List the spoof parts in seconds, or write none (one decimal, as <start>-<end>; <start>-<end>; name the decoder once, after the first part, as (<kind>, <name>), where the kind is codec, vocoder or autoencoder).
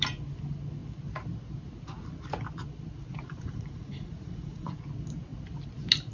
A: 3.1-4.7 (vocoder, Vocos)